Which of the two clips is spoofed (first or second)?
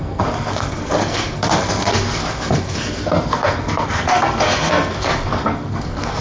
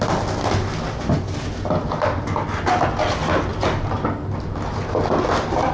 first